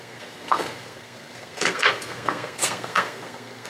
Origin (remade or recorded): remade